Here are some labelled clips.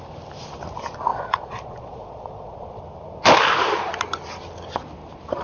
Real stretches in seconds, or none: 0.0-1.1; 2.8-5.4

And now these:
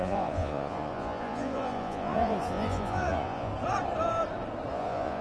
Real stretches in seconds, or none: 3.5-4.7

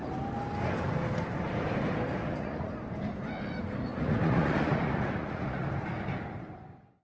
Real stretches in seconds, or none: 0.0-2.2; 2.7-3.9; 5.7-7.0

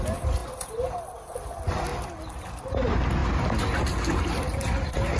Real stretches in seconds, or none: 0.0-5.2